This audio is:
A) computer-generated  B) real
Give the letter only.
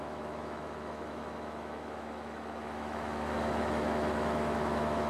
A